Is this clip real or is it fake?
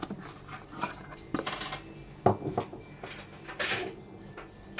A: real